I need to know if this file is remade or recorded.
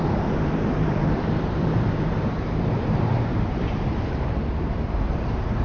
remade